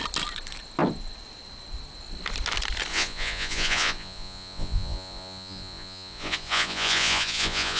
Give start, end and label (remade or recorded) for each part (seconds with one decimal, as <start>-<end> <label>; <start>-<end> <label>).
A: 0.0-2.9 recorded; 2.9-7.8 remade